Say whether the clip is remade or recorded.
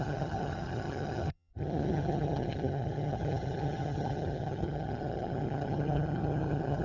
remade